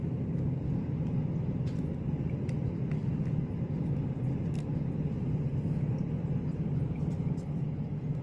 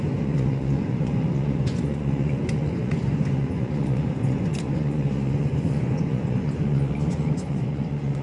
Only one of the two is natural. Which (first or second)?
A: first